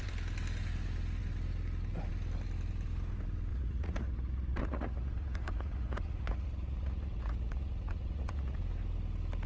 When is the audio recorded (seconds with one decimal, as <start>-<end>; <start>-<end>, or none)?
0.0-3.5; 8.6-9.5